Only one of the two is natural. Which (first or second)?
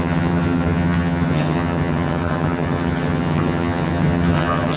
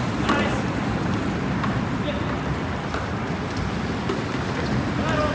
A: second